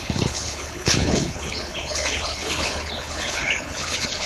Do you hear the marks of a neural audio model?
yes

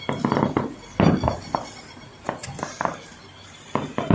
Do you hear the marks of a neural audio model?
no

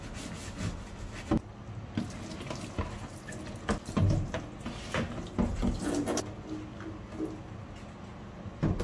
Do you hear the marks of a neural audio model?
no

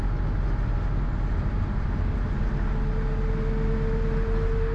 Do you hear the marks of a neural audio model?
no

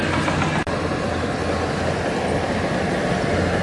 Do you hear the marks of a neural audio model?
no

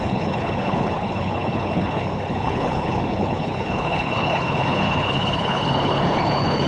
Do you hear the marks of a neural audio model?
yes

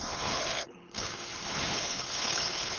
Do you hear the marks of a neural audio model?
yes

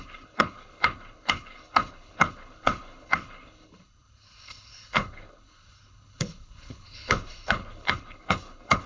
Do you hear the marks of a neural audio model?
yes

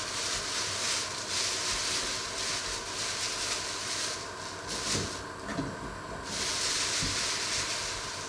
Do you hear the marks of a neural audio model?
no